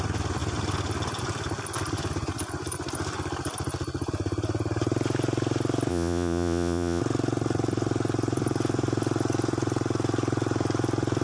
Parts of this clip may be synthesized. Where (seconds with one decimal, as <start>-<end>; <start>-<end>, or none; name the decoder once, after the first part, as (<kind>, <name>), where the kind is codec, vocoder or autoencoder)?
5.9-7.0 (vocoder, Vocos)